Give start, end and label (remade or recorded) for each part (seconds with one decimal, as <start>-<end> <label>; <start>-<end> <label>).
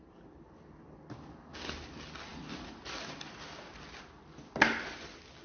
0.0-5.4 recorded